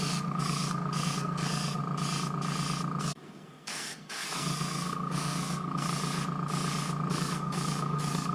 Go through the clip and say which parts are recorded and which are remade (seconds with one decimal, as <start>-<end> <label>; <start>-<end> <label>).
0.0-1.8 remade; 1.8-3.0 recorded; 3.0-5.9 remade; 5.9-7.1 recorded; 7.1-8.3 remade